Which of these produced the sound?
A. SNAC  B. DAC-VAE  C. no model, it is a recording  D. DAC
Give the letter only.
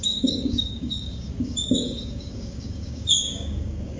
D